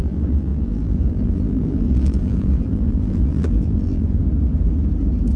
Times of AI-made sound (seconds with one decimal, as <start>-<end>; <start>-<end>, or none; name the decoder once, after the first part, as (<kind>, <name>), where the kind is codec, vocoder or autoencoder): 0.0-4.2 (vocoder, BigVGAN v2)